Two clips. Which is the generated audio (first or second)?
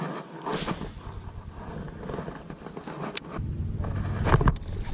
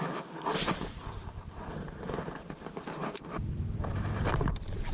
second